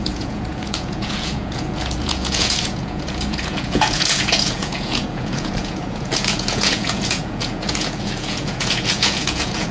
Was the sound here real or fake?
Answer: fake